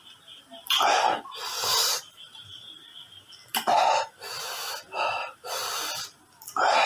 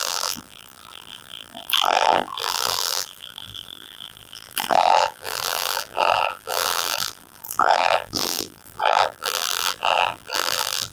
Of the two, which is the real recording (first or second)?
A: first